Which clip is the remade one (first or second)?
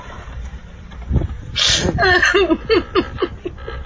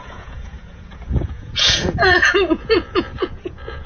second